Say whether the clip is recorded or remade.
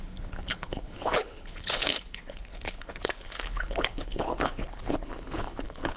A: remade